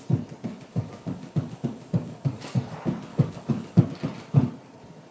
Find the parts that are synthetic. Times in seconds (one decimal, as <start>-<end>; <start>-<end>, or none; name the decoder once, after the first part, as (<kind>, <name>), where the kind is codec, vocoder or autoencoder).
0.7-2.5 (codec, DAC); 3.1-3.8